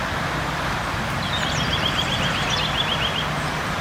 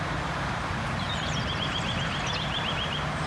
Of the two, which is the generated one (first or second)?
second